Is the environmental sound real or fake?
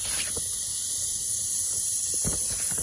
real